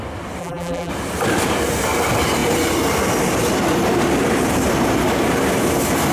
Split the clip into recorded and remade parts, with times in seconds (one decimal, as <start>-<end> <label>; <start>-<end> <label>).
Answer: 0.0-0.4 recorded; 0.4-0.9 remade; 0.9-6.1 recorded